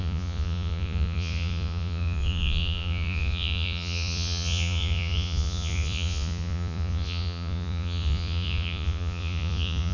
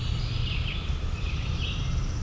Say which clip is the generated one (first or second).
first